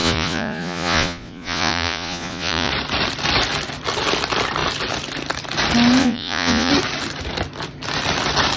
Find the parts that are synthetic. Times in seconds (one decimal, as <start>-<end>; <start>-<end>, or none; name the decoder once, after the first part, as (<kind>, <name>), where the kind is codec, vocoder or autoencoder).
0.0-2.7 (vocoder, Vocos); 6.0-6.7

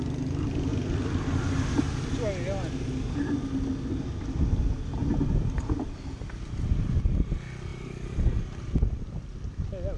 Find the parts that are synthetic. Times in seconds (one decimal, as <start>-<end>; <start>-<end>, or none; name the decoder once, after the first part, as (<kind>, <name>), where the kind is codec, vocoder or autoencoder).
0.7-1.8 (vocoder, BigVGAN v2)

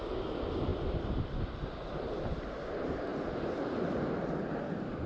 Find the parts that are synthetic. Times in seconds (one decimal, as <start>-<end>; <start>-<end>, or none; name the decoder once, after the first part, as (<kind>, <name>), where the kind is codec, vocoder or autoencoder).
0.7-1.4 (vocoder, BigVGAN v2); 3.1-4.1

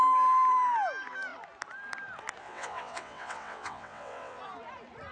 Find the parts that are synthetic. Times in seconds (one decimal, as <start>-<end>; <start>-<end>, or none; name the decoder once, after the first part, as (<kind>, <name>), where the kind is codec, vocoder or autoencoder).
2.4-4.4 (vocoder, WaveNeXt)

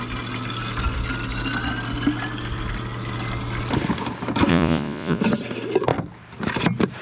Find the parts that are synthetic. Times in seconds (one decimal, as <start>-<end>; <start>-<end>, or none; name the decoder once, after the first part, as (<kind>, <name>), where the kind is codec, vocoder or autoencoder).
4.5-5.2 (vocoder, Vocos)